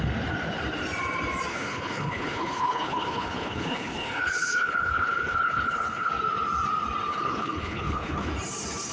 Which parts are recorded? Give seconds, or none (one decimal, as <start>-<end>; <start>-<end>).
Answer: 0.0-1.5; 6.1-7.1; 8.3-8.9